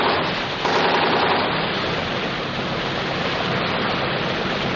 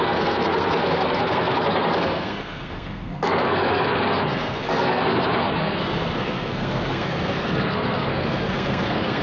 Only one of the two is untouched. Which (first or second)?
first